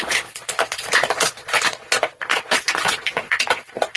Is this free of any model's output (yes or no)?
no